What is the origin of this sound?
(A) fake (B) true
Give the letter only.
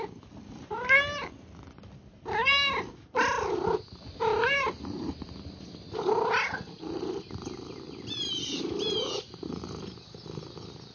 B